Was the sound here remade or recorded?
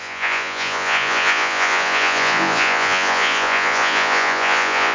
remade